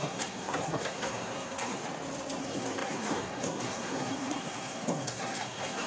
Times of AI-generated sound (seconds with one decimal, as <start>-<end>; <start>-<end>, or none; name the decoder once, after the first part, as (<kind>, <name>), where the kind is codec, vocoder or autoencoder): 0.0-1.8 (codec, SNAC); 2.4-5.9